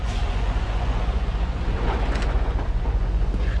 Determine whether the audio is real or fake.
fake